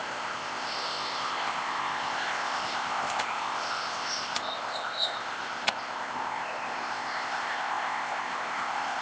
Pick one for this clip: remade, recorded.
remade